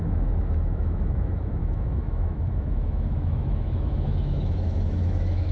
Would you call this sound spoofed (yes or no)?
yes